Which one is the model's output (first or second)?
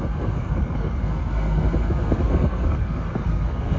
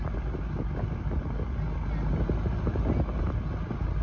first